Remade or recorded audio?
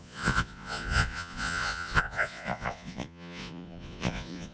remade